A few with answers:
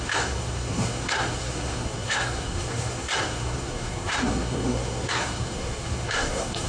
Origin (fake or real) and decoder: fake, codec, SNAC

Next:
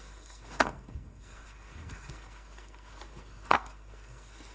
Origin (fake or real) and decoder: fake, codec, SNAC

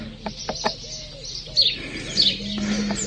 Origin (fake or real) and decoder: real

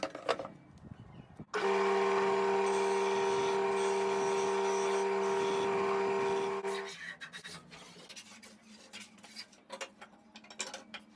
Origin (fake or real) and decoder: real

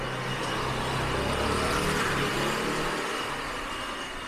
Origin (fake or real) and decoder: real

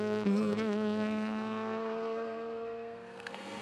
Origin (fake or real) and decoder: fake, codec, SNAC